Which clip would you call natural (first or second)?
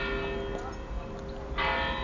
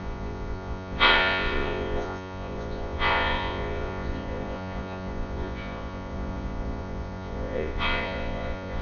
first